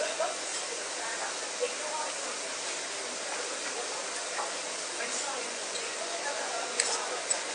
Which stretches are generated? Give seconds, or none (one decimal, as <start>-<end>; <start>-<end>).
0.0-0.5; 5.0-7.5